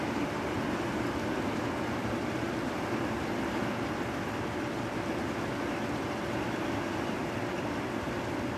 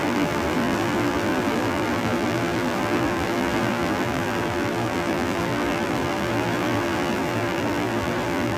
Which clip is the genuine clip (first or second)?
first